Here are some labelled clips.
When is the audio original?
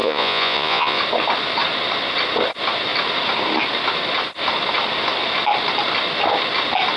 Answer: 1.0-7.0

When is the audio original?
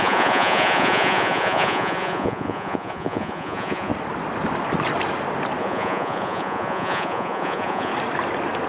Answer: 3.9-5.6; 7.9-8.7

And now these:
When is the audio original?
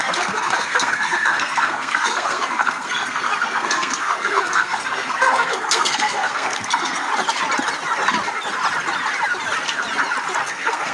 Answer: 7.1-10.5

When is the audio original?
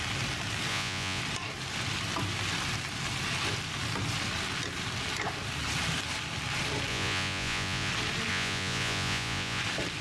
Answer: 0.0-0.7; 1.2-6.9; 7.9-8.3; 9.6-10.0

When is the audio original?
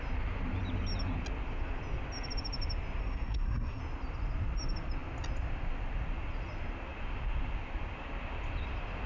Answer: 0.0-3.0; 3.8-9.1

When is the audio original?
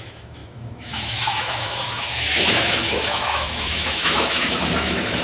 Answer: none